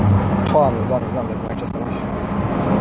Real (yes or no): yes